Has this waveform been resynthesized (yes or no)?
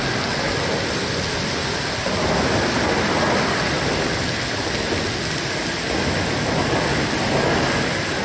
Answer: no